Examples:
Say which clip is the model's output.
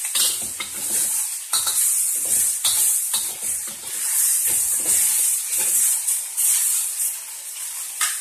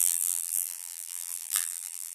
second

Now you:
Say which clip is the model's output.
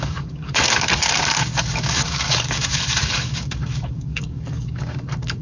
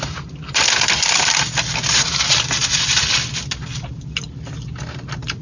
first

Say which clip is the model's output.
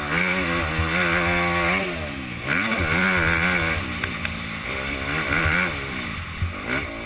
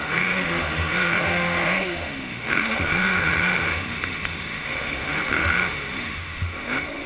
second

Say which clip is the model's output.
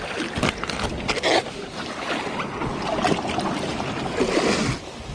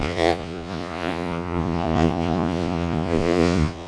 second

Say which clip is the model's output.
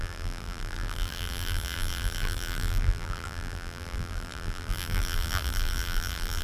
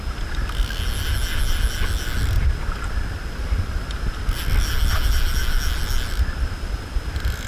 first